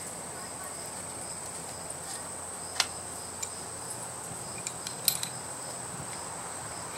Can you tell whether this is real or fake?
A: real